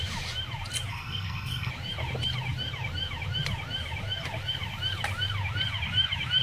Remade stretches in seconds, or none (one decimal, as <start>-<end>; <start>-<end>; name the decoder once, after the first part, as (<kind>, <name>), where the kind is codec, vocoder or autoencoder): 0.9-1.7 (codec, SNAC)